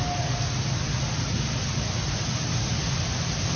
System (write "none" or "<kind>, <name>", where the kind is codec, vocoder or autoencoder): none